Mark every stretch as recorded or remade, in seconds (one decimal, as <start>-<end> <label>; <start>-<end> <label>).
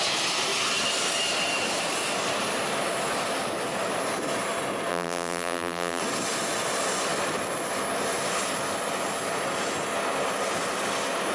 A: 0.0-4.9 recorded; 4.9-6.0 remade; 6.0-11.3 recorded